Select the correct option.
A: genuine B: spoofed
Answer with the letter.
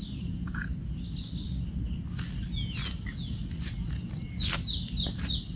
A